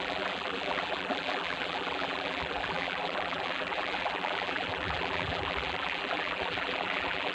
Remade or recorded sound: remade